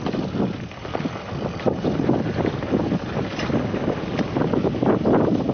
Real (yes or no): yes